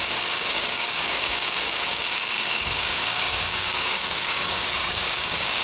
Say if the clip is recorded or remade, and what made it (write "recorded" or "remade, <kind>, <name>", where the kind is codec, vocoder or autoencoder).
remade, codec, DAC